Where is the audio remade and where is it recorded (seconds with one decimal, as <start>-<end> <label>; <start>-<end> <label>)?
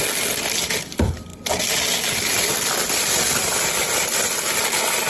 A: 0.0-5.1 recorded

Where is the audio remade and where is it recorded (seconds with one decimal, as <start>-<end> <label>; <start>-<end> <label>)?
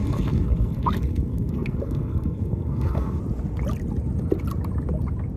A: 0.0-3.2 remade; 3.2-5.4 recorded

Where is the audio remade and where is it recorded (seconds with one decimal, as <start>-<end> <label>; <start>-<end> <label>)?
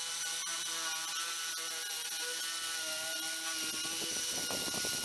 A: 0.0-5.0 recorded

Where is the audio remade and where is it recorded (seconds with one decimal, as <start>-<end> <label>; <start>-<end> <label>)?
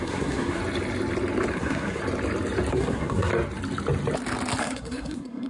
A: 0.0-0.6 remade; 0.6-1.5 recorded; 1.5-2.0 remade; 2.0-2.7 recorded; 2.7-3.3 remade; 3.3-4.6 recorded; 4.6-5.5 remade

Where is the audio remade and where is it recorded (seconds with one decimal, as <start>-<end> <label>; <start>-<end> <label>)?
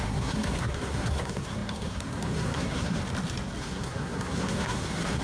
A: 0.0-3.0 remade; 3.0-3.6 recorded; 3.6-5.2 remade